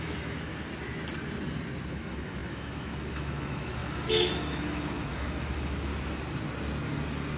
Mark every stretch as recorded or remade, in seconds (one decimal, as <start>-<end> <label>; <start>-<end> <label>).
0.0-0.5 remade; 0.5-1.9 recorded; 1.9-5.9 remade; 5.9-7.4 recorded